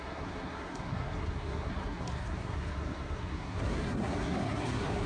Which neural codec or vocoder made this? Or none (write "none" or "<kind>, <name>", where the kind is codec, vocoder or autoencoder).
codec, SNAC